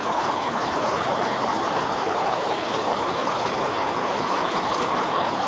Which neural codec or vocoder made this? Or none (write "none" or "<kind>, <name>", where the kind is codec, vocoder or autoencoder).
codec, HILCodec